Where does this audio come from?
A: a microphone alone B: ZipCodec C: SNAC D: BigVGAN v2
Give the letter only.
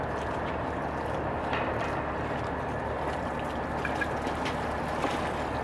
A